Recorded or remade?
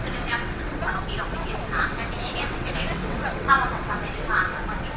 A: remade